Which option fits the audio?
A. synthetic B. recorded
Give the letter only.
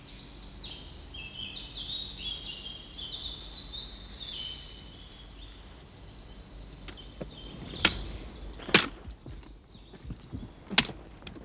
B